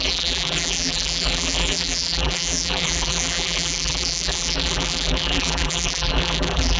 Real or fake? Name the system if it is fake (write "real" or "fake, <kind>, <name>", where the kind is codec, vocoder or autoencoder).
fake, vocoder, BigVGAN v2